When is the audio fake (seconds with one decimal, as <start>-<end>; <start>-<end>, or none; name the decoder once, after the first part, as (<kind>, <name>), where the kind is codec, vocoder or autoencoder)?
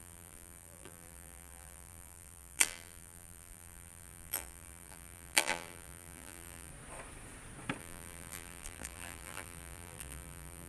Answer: 0.0-6.7 (vocoder, BigVGAN v2); 7.8-10.7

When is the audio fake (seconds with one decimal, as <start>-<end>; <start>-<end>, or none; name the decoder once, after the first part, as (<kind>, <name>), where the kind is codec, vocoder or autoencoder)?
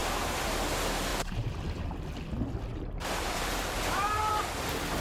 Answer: 1.1-1.9 (vocoder, BigVGAN v2); 2.7-4.3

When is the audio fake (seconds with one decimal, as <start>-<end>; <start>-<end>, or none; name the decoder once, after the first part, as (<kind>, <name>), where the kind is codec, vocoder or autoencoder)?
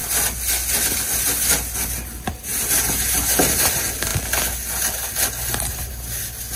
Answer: none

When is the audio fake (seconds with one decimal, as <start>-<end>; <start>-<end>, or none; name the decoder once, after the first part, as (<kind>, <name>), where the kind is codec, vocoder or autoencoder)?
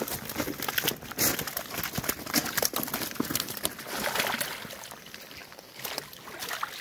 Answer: 2.4-6.0 (vocoder, BigVGAN v2)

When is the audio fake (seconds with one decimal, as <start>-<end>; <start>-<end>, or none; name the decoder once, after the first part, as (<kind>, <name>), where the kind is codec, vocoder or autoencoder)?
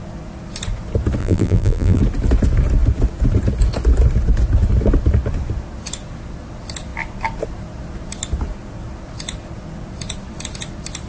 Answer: 1.2-2.0 (vocoder, BigVGAN v2)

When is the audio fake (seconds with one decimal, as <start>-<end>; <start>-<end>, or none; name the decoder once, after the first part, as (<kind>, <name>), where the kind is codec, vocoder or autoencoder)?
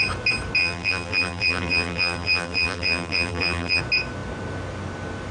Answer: 0.6-3.8 (vocoder, BigVGAN v2)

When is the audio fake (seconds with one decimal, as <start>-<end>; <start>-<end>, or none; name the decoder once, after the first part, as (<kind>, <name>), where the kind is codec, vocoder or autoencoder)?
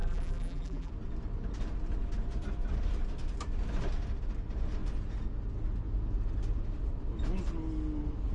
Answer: 0.0-0.9 (vocoder, BigVGAN v2)